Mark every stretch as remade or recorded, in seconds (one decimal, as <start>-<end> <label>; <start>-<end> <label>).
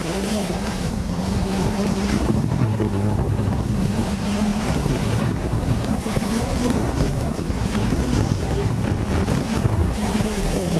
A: 0.0-8.8 remade; 8.8-9.3 recorded; 9.3-10.8 remade